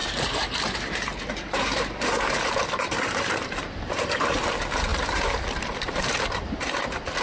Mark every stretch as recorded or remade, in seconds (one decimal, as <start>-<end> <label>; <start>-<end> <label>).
0.0-4.3 remade; 4.3-4.9 recorded; 4.9-6.0 remade; 6.0-7.2 recorded